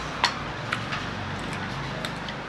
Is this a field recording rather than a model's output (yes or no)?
yes